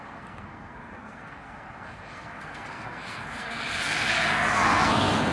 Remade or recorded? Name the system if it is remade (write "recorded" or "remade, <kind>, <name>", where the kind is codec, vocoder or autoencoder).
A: remade, codec, SNAC